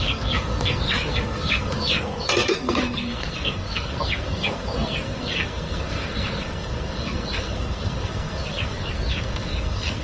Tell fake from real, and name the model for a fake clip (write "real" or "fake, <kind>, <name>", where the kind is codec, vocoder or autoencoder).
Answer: fake, codec, SNAC